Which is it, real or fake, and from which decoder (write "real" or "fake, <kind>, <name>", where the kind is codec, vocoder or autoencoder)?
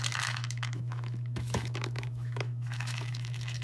fake, autoencoder, DAC-VAE